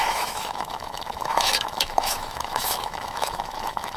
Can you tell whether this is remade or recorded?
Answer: remade